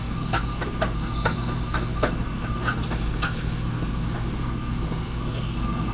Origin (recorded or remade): remade